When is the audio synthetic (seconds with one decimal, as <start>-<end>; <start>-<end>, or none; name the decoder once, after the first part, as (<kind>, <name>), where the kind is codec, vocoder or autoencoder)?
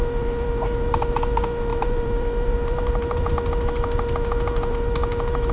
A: 1.7-3.3 (vocoder, BigVGAN v2)